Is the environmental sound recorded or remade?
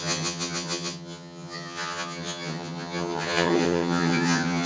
remade